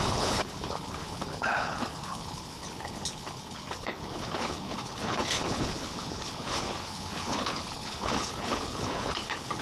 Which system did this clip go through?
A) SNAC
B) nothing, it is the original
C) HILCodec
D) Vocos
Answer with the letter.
C